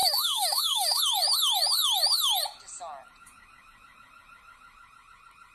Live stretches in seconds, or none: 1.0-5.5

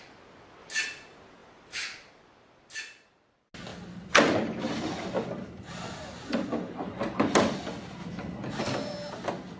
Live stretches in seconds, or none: 0.0-1.4; 2.7-8.0; 8.6-9.6

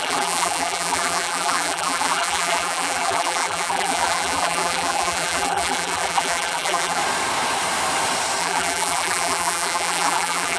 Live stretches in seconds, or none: 7.0-8.4